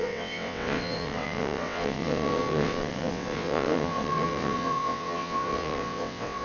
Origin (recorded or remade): remade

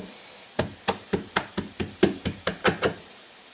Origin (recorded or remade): recorded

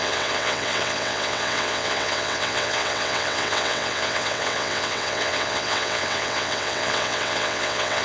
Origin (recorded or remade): remade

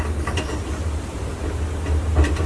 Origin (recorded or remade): recorded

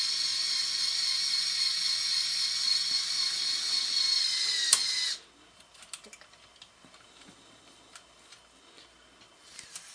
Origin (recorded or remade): recorded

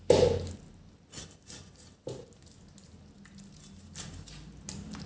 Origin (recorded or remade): recorded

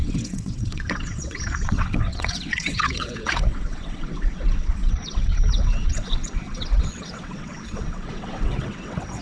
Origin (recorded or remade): remade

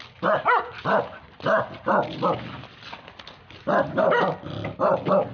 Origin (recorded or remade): recorded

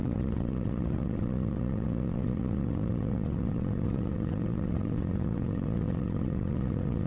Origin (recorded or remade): remade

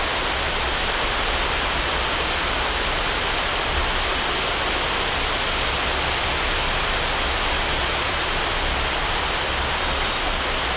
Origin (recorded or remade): recorded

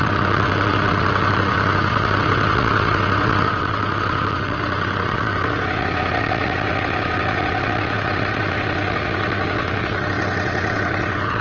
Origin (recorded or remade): remade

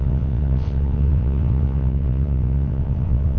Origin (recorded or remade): remade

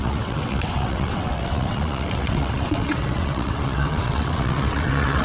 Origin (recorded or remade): remade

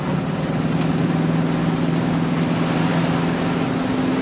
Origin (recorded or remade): recorded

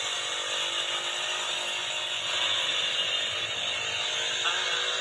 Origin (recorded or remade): recorded